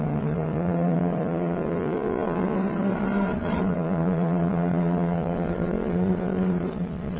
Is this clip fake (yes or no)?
yes